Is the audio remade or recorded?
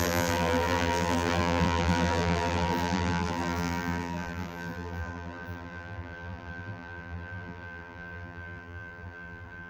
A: remade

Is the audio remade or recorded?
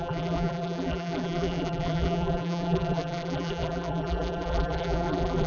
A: remade